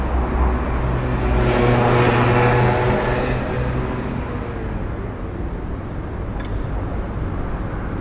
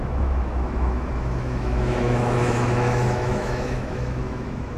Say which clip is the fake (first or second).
second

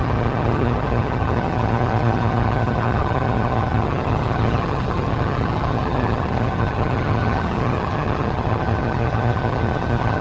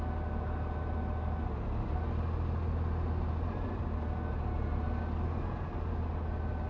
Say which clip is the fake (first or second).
first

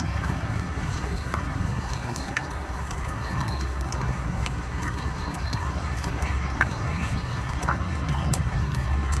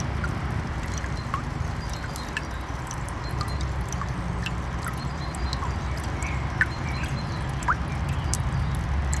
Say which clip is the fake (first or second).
first